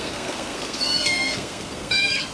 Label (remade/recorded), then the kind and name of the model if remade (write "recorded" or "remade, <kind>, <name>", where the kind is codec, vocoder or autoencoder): remade, codec, SNAC